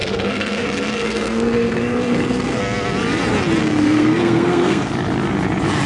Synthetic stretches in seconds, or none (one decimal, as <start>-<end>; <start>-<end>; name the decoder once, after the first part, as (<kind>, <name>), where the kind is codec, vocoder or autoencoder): 0.0-2.6 (codec, SNAC); 3.6-4.9